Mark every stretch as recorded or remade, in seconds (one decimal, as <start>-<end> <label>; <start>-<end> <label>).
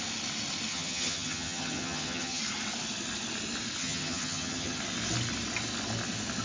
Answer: 0.0-0.7 recorded; 0.7-2.4 remade; 2.4-3.8 recorded; 3.8-4.8 remade; 4.8-6.4 recorded